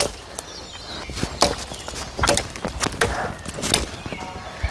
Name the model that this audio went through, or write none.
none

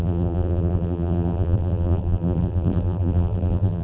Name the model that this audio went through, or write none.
vocoder, BigVGAN v2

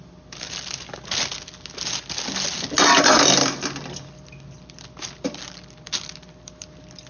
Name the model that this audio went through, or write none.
none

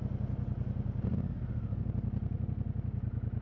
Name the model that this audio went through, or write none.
none